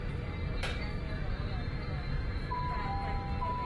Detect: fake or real real